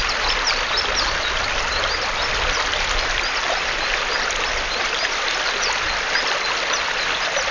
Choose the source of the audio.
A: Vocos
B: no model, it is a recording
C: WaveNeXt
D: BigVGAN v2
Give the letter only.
B